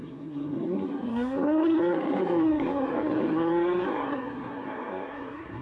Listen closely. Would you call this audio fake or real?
fake